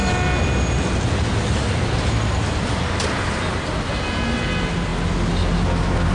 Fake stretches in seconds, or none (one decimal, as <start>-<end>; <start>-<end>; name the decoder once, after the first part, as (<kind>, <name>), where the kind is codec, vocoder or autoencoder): none